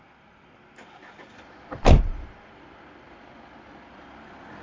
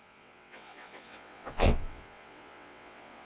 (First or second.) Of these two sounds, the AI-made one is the second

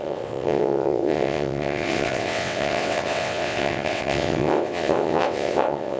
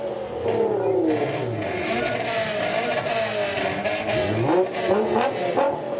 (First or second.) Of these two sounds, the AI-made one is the first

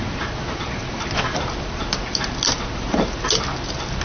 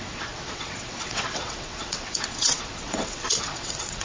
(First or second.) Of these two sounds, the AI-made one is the second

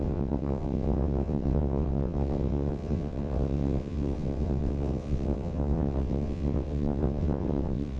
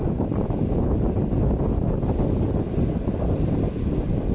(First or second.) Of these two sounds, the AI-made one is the first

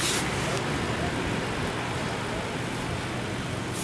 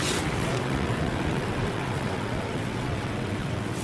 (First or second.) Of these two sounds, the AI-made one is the second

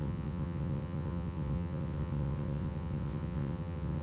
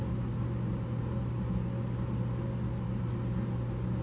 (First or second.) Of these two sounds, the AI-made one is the first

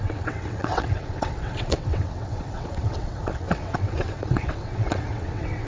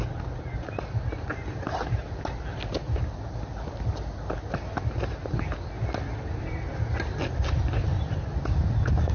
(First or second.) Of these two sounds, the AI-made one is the first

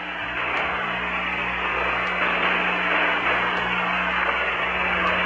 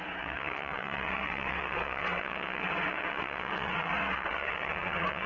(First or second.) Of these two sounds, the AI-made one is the second